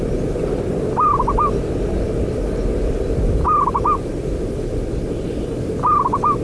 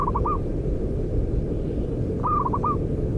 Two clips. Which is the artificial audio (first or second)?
second